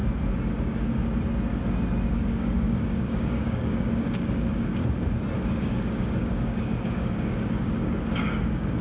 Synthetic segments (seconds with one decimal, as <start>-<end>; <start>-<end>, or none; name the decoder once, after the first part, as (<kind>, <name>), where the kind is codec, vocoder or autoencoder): 0.6-1.0 (codec, DAC); 2.1-4.8; 5.4-8.8